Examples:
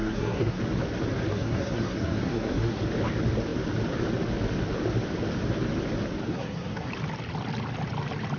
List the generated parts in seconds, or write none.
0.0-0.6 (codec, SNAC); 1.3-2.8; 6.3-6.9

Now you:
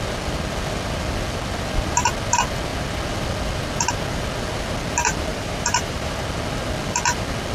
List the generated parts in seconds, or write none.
5.3-6.2 (vocoder, BigVGAN v2)

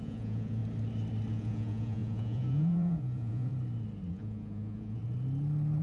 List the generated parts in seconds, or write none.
0.0-0.6 (vocoder, Vocos); 1.3-3.5; 4.1-5.0

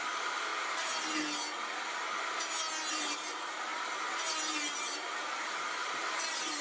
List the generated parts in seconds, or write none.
0.0-0.5 (vocoder, BigVGAN v2); 2.9-3.7; 4.3-6.6